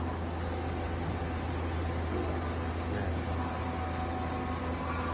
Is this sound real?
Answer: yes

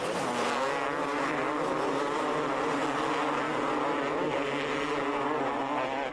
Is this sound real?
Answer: yes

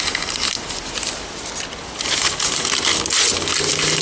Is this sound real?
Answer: yes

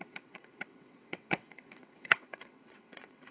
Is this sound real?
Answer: no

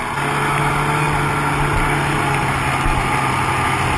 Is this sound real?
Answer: yes